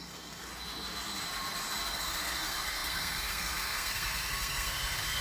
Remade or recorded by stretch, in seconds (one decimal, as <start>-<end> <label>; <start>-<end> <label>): 0.0-0.5 remade; 0.5-1.9 recorded; 1.9-5.2 remade